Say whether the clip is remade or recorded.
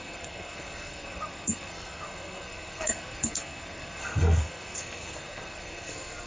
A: remade